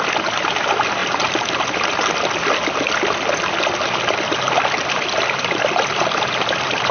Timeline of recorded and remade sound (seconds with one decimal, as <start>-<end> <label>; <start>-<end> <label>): 0.0-1.0 remade; 1.0-4.5 recorded; 4.5-6.9 remade